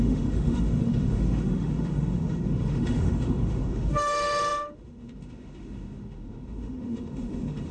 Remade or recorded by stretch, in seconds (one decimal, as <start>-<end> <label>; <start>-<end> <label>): 0.0-7.7 remade